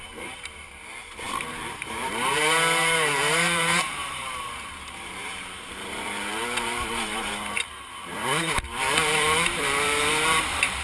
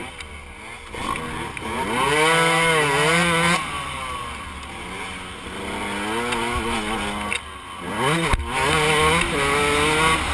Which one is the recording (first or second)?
second